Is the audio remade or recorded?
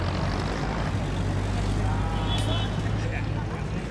recorded